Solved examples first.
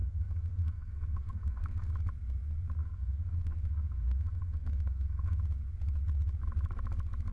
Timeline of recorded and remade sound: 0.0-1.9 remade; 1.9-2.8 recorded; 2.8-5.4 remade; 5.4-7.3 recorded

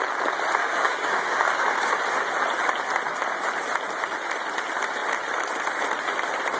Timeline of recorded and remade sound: 0.0-0.6 recorded; 0.6-1.9 remade; 1.9-6.6 recorded

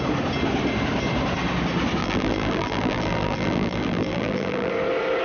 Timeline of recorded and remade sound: 0.0-2.0 recorded; 2.0-4.7 remade; 4.7-5.2 recorded

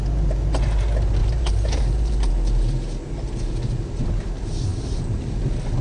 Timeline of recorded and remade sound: 0.0-1.2 recorded; 1.2-2.3 remade; 2.3-4.7 recorded; 4.7-5.2 remade; 5.2-5.8 recorded

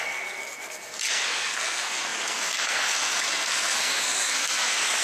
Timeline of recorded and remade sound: 0.0-5.0 remade

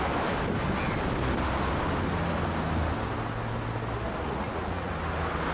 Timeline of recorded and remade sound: 0.0-4.2 recorded; 4.2-4.9 remade; 4.9-5.5 recorded

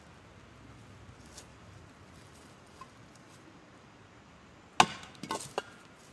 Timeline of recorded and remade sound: 0.0-1.5 recorded; 1.5-4.7 remade; 4.7-6.1 recorded